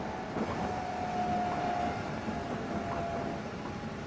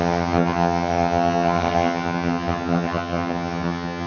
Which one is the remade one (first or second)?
second